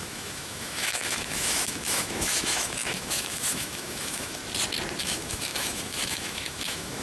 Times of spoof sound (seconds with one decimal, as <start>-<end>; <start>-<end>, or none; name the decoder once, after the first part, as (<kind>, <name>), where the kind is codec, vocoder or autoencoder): 0.0-4.4 (autoencoder, DAC-VAE); 5.0-7.0

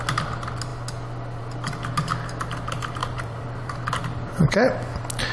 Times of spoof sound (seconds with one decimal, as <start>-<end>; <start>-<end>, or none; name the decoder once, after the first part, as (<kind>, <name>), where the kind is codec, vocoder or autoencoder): 3.0-3.7 (vocoder, BigVGAN v2)

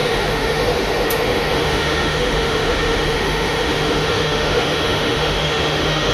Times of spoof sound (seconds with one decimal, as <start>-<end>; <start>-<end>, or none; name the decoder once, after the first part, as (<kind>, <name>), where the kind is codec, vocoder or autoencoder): 0.0-6.1 (autoencoder, DAC-VAE)